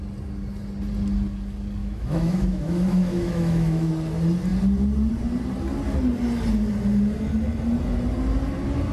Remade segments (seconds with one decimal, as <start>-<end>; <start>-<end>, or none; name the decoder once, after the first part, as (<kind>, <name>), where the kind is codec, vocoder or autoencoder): 1.8-3.9 (autoencoder, DAC-VAE)